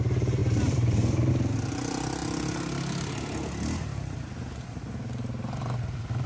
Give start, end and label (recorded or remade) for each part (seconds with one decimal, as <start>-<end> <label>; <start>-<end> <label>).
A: 0.0-0.4 recorded; 0.4-1.3 remade; 1.3-6.3 recorded